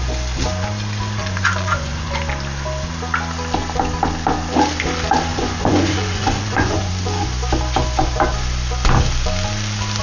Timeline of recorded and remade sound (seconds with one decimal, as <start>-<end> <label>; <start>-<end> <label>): 0.0-1.2 recorded; 1.2-2.2 remade; 2.2-5.3 recorded; 5.3-6.9 remade; 6.9-10.0 recorded